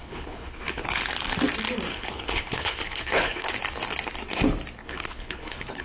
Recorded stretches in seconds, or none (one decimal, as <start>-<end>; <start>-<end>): 1.0-1.9; 3.5-4.8

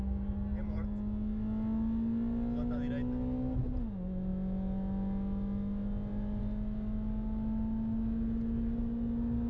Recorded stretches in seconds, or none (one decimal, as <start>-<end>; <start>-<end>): 0.0-9.5